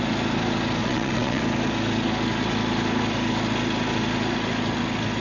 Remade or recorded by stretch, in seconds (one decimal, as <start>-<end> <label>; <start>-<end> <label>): 0.0-0.8 recorded; 0.8-1.4 remade; 1.4-5.2 recorded